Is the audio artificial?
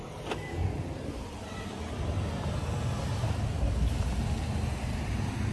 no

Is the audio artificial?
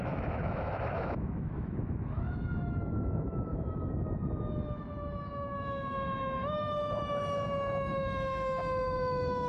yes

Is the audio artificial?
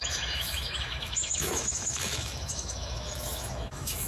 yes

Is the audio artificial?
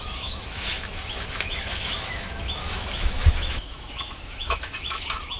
yes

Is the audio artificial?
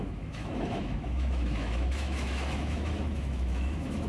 yes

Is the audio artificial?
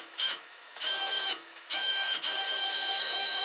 yes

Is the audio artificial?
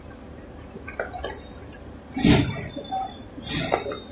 no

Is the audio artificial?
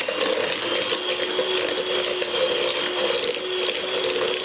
no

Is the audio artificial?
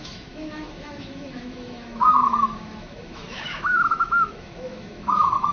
yes